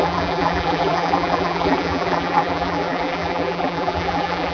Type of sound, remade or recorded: remade